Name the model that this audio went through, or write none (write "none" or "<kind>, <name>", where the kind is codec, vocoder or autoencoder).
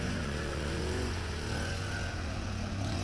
vocoder, Vocos